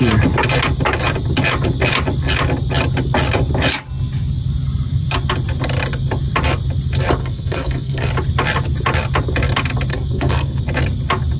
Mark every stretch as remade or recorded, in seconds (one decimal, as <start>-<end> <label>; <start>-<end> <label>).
0.0-7.2 recorded; 7.2-8.1 remade; 8.1-9.9 recorded; 9.9-10.6 remade; 10.6-11.4 recorded